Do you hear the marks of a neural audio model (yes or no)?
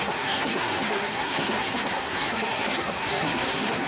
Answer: yes